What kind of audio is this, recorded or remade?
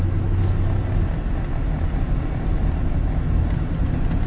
recorded